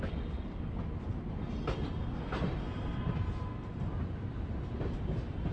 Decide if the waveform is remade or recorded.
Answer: recorded